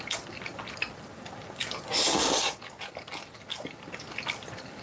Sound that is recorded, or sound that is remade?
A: recorded